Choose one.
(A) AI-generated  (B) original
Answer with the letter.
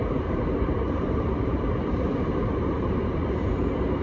A